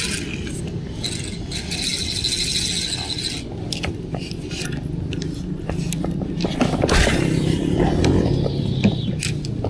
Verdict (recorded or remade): recorded